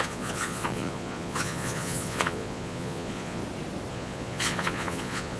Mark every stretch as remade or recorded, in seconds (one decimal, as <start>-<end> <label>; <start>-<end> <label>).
0.0-3.4 remade; 3.4-3.9 recorded; 3.9-5.4 remade